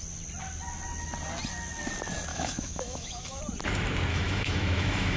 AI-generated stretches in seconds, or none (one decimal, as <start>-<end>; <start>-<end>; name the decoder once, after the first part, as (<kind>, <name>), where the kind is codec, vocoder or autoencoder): 2.3-3.4 (autoencoder, DAC-VAE); 4.1-5.2